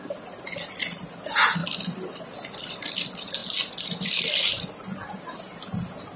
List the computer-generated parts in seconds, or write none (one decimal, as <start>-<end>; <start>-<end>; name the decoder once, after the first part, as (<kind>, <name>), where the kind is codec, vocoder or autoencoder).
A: none